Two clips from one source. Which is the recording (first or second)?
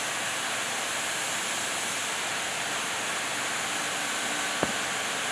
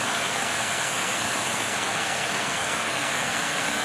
first